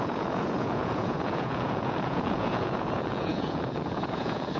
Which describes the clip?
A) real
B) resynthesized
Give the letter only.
B